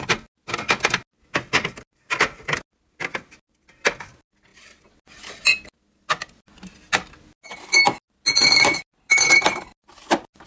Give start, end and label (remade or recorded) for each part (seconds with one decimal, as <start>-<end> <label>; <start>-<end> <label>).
0.0-10.5 recorded